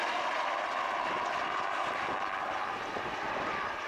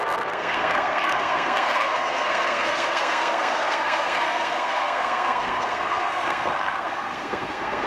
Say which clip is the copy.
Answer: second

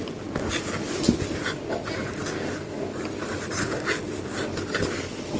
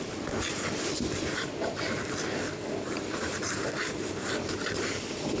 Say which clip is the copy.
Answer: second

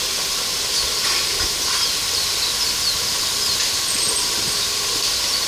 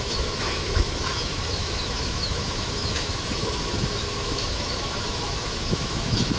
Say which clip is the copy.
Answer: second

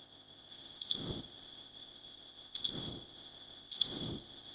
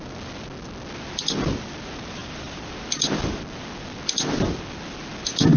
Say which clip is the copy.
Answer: first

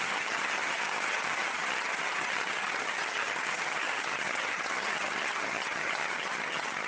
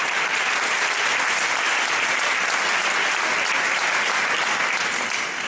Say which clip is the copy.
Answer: first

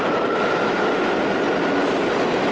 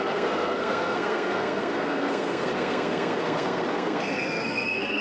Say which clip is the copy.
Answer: second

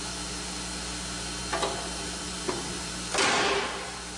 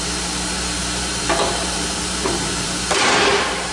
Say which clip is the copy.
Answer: second